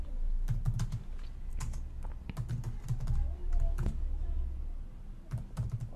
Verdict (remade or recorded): recorded